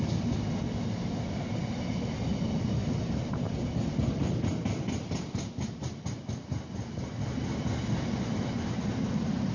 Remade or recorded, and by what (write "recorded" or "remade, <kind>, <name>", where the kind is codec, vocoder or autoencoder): recorded